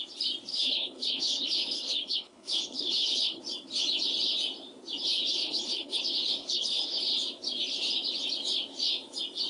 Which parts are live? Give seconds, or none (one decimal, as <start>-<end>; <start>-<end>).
0.0-0.5; 3.4-5.4; 6.0-6.4; 7.0-9.5